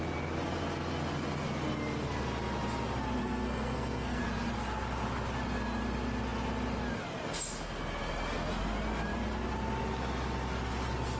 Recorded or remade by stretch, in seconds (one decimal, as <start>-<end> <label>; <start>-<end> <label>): 0.0-3.2 recorded; 3.2-4.2 remade; 4.2-11.2 recorded

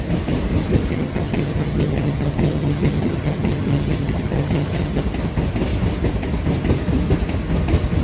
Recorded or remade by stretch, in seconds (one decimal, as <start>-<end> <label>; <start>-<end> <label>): 0.0-0.9 recorded; 0.9-5.0 remade; 5.0-8.0 recorded